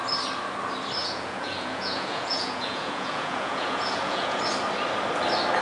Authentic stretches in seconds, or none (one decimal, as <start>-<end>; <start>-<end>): 0.0-1.0; 4.4-5.6